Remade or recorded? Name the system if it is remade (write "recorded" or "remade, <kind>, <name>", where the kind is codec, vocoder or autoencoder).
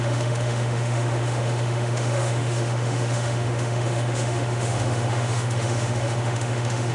remade, autoencoder, DAC-VAE